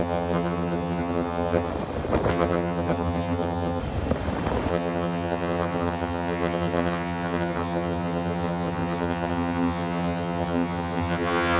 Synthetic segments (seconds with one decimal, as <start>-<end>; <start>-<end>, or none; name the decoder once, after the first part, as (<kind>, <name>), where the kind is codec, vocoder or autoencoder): 0.0-1.7 (vocoder, HiFi-GAN); 2.3-3.8; 4.7-11.6